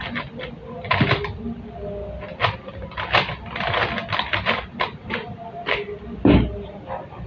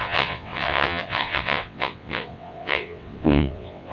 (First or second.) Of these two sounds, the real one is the first